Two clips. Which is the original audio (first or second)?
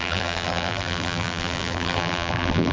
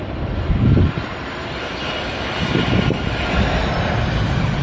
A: second